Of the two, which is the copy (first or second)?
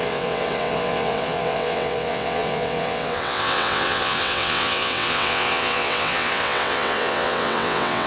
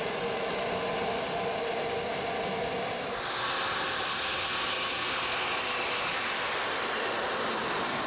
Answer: first